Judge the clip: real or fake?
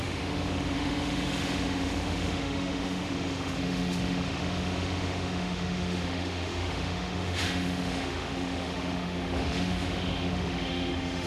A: fake